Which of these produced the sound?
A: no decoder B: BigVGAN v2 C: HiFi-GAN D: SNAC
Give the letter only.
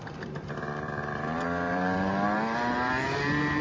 B